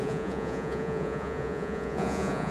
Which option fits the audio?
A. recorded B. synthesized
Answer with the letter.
B